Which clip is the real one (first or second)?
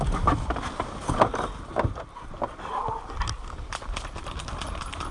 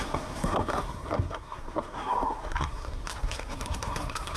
first